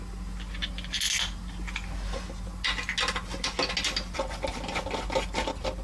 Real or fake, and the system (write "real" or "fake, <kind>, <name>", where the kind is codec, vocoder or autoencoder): real